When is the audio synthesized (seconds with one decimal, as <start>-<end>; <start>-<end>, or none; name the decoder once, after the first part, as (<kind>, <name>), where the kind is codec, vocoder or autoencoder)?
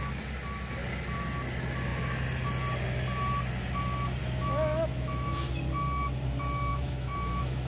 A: 4.2-5.5 (autoencoder, DAC-VAE); 6.7-7.7